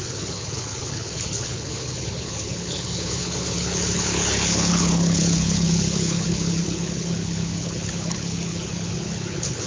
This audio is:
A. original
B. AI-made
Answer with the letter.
B